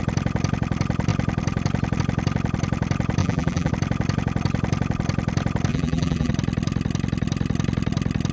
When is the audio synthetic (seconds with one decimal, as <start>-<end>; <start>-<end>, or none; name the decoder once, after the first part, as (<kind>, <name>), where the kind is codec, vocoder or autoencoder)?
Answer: 3.2-3.7 (vocoder, BigVGAN v2); 5.7-6.3